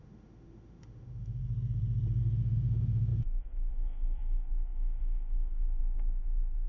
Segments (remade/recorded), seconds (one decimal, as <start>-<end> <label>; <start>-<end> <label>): 0.0-1.4 remade; 1.4-2.2 recorded; 2.2-6.7 remade